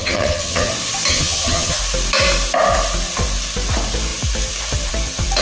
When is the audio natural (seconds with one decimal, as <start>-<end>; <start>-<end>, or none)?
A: 0.7-1.1; 1.8-5.4

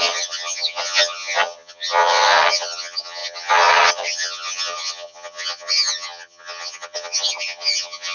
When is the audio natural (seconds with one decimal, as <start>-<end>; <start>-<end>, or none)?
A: none